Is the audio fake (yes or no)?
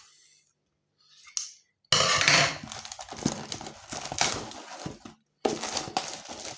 no